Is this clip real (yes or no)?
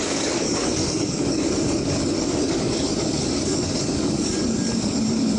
no